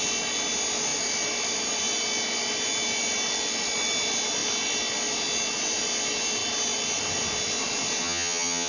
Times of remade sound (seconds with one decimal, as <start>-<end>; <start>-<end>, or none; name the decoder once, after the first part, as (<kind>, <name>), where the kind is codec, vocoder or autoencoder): 8.0-8.7 (vocoder, HiFi-GAN)